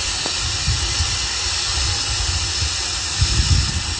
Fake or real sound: real